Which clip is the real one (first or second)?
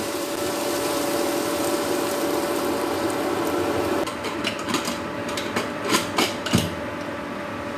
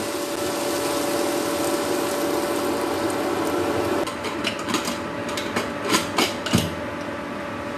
second